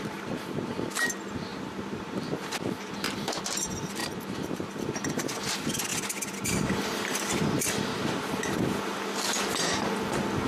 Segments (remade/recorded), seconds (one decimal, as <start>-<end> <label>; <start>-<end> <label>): 0.0-1.5 recorded; 1.5-2.0 remade; 2.0-4.0 recorded; 4.0-4.8 remade; 4.8-10.5 recorded